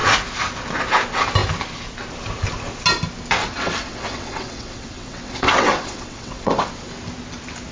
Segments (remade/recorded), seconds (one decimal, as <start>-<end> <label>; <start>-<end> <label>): 0.0-3.4 recorded; 3.4-6.7 remade; 6.7-7.7 recorded